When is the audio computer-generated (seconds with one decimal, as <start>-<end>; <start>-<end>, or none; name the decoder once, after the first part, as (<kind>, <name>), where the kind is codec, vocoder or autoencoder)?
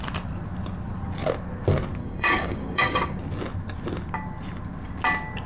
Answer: 2.0-3.2 (codec, DAC)